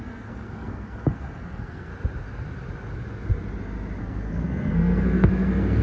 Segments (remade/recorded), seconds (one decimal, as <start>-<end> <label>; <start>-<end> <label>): 0.0-1.9 remade; 1.9-4.0 recorded; 4.0-5.8 remade

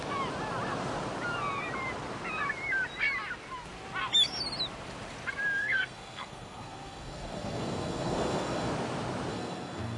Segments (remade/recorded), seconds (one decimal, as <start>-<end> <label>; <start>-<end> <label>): 0.0-5.6 recorded; 5.6-8.7 remade; 8.7-9.3 recorded; 9.3-10.0 remade

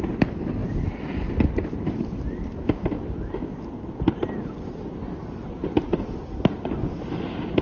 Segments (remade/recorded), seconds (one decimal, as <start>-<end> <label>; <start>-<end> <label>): 0.0-7.6 recorded

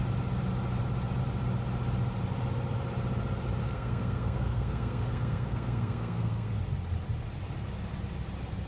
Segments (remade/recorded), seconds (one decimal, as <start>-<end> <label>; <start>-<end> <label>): 0.0-3.6 recorded; 3.6-6.6 remade; 6.6-8.7 recorded